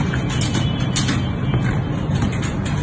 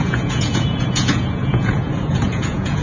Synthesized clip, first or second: second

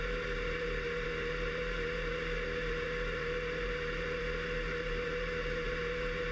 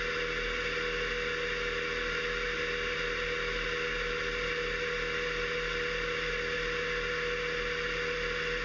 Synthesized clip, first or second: first